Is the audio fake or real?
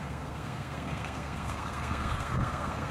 fake